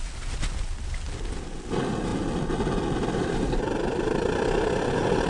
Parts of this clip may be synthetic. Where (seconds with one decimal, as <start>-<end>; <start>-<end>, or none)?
none